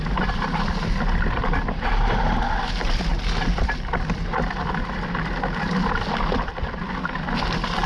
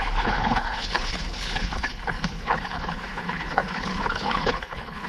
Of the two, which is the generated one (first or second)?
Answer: second